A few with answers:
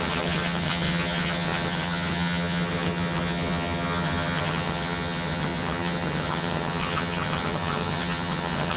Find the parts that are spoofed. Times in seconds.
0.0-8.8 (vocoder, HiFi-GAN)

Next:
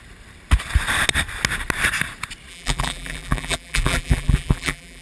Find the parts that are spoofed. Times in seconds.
2.5-5.0 (vocoder, BigVGAN v2)